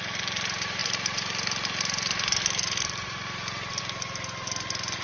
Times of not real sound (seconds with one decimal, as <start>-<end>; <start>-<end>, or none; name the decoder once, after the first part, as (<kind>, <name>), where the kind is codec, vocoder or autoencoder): none